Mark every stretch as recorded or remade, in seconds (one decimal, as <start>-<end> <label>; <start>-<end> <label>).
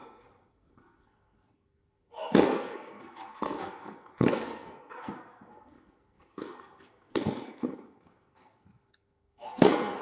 0.0-10.0 remade